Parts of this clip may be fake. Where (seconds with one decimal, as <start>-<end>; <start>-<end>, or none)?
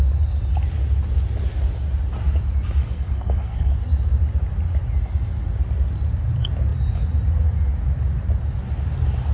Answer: 2.8-3.7